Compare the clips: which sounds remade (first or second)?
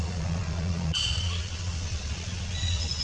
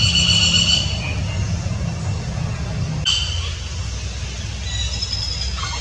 first